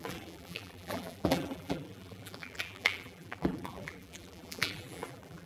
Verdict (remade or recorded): remade